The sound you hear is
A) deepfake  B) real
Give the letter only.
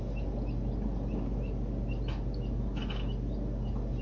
B